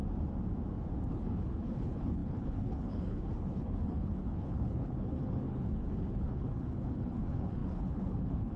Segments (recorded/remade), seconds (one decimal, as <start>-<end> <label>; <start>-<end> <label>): 0.0-1.1 recorded; 1.1-8.6 remade